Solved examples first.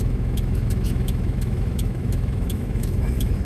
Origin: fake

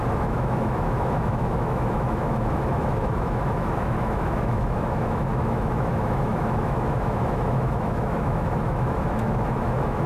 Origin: fake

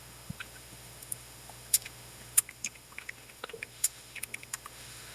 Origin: fake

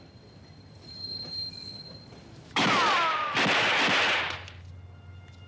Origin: real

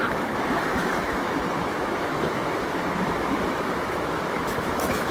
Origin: fake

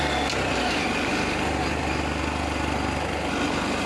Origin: real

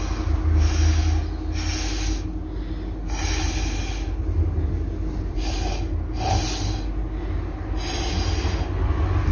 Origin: real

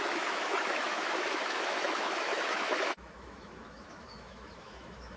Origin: fake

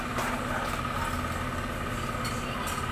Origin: real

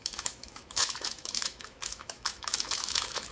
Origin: fake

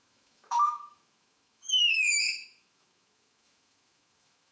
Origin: fake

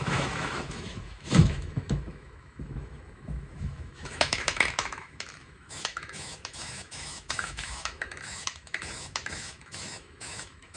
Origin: fake